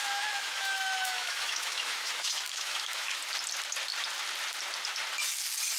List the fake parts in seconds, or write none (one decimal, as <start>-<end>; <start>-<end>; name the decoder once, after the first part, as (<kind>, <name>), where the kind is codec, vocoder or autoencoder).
0.0-3.2 (autoencoder, DAC-VAE)